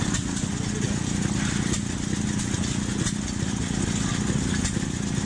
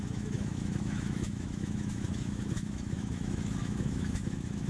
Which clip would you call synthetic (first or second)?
second